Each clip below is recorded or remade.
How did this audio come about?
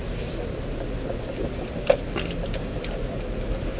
recorded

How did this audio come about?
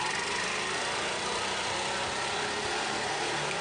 recorded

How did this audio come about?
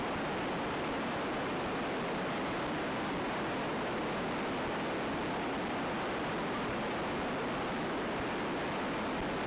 recorded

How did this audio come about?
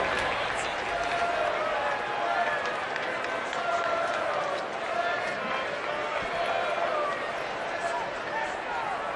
recorded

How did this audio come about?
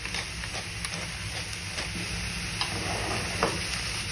recorded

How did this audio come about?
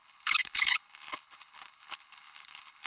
remade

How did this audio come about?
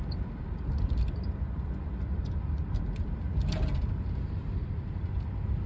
recorded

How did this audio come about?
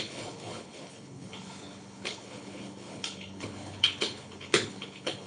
remade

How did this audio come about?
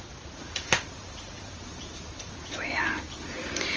recorded